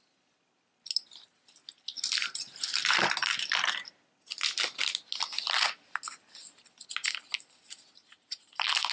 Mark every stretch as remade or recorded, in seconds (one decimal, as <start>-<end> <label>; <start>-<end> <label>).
0.0-8.9 recorded